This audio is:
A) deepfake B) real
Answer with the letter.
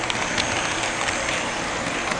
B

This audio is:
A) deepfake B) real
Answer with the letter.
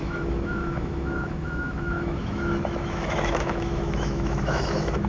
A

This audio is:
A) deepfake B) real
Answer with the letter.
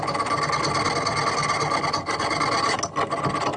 B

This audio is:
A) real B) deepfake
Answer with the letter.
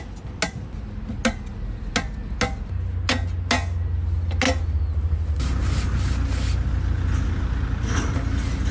A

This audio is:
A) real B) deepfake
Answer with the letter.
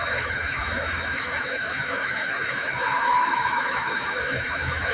B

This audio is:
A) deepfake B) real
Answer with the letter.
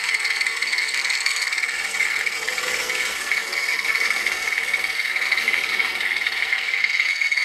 A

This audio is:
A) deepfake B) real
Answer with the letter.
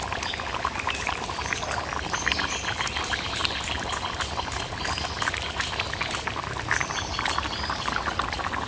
B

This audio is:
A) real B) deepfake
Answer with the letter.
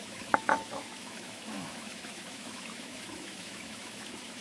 B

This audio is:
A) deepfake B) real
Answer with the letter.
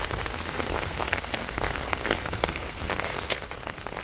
A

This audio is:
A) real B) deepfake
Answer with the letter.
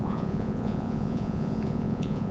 B